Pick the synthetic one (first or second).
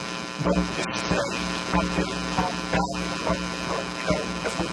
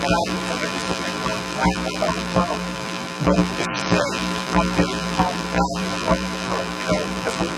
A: second